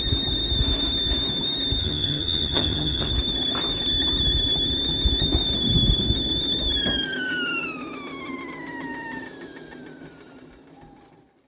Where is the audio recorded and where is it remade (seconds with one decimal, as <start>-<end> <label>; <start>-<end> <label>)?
0.0-1.8 recorded; 1.8-3.1 remade; 3.1-11.5 recorded

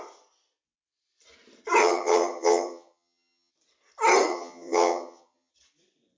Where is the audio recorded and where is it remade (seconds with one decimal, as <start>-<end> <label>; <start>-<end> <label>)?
0.0-1.8 recorded; 1.8-3.5 remade; 3.5-4.3 recorded; 4.3-5.5 remade; 5.5-6.2 recorded

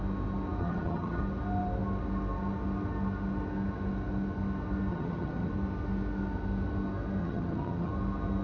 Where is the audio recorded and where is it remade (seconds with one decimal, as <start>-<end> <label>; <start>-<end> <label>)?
0.0-0.6 recorded; 0.6-1.2 remade; 1.2-4.9 recorded; 4.9-5.5 remade; 5.5-7.2 recorded; 7.2-7.9 remade; 7.9-8.4 recorded

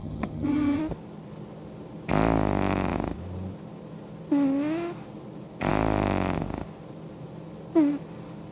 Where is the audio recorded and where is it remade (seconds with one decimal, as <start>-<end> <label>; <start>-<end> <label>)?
0.0-0.8 remade; 0.8-8.5 recorded

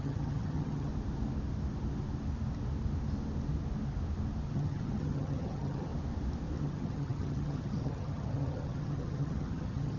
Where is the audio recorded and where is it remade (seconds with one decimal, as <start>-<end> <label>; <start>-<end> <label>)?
0.0-0.9 remade; 0.9-4.5 recorded; 4.5-5.9 remade; 5.9-6.6 recorded; 6.6-10.0 remade